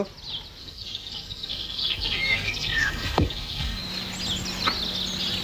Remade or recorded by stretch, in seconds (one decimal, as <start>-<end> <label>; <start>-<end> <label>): 0.0-0.6 recorded; 0.6-3.8 remade; 3.8-5.4 recorded